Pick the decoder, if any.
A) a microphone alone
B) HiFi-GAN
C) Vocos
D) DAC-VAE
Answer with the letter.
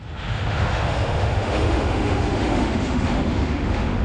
D